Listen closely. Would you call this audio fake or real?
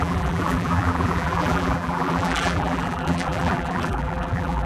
fake